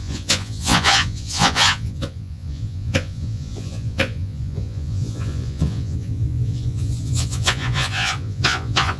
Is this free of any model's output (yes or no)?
no